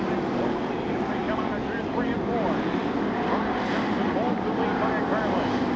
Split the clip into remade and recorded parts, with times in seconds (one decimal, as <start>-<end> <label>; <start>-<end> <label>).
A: 0.0-5.8 recorded